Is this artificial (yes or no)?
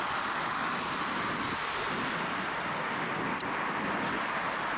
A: no